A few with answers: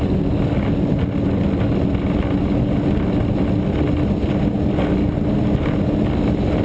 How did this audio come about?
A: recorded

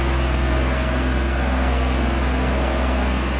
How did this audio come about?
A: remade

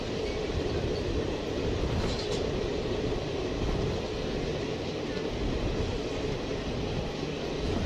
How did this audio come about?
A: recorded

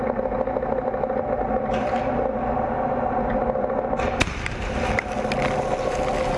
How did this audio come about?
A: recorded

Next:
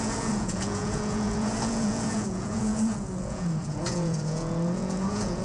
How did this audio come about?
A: remade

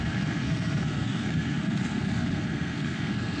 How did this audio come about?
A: remade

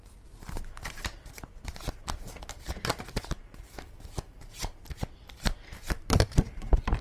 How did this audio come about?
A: remade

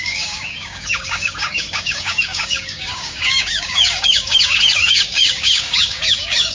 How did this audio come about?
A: remade